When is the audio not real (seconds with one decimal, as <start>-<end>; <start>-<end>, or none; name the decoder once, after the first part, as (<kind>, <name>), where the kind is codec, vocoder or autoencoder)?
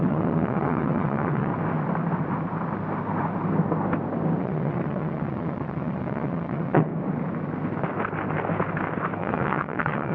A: 0.0-1.5 (vocoder, WaveNeXt); 4.4-6.9; 9.2-10.1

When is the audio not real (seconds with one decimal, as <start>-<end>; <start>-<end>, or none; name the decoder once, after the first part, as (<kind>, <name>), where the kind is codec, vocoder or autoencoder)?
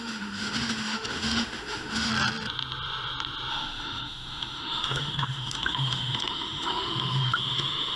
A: 0.0-2.1 (autoencoder, DAC-VAE); 3.5-8.0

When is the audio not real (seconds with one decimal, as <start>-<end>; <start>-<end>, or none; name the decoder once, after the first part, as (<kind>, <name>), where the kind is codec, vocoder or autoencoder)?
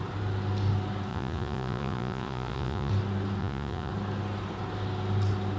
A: 1.1-2.9 (vocoder, Vocos); 3.4-3.9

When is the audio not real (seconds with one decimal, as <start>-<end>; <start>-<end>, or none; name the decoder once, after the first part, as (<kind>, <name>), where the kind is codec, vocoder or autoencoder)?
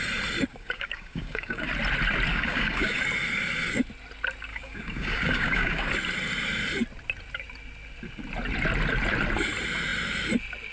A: 0.5-1.7 (codec, DAC); 2.3-3.0; 4.5-5.9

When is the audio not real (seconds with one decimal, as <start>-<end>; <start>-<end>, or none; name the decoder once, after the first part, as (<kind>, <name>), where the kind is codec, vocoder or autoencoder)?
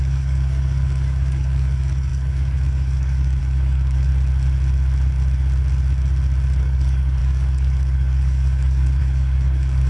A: 0.0-4.1 (codec, DAC); 6.6-9.9